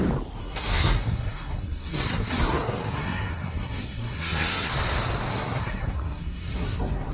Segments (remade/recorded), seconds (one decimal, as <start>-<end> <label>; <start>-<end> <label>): 0.0-0.4 recorded; 0.4-4.7 remade; 4.7-5.3 recorded; 5.3-7.1 remade